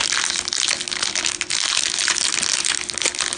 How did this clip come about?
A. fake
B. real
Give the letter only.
B